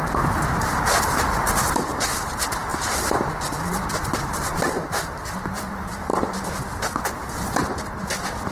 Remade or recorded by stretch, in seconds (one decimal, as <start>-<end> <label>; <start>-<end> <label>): 0.0-6.1 remade; 6.1-8.5 recorded